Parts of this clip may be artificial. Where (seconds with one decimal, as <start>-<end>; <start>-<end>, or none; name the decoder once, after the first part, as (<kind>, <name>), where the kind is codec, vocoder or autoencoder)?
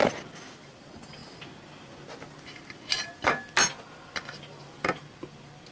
none